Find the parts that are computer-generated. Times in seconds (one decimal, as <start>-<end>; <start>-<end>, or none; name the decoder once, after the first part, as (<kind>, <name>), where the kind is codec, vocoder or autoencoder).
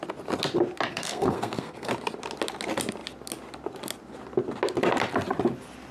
0.9-1.9 (codec, SNAC)